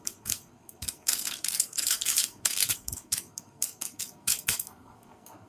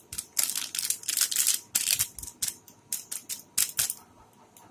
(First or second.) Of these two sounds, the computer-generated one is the first